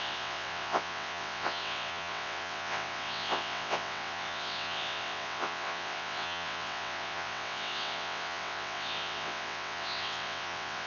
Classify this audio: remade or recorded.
remade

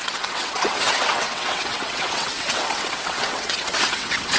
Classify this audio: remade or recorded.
remade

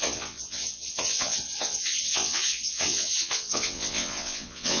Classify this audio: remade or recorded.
remade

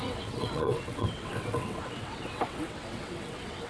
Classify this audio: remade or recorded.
remade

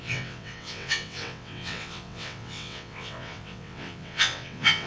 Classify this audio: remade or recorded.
remade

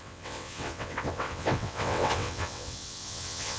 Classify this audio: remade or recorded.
remade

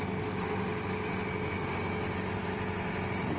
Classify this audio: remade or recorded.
recorded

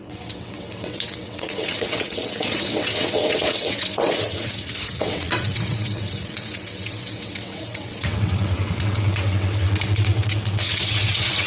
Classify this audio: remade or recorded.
remade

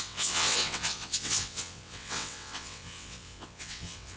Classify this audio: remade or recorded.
remade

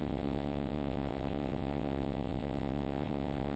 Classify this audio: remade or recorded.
remade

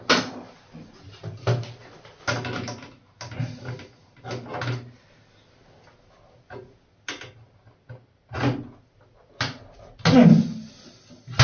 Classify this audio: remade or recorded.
recorded